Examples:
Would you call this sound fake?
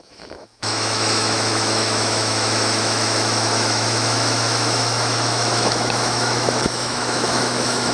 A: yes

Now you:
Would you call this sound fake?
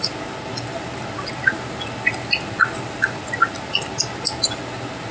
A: no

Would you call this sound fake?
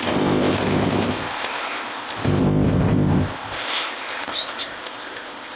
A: yes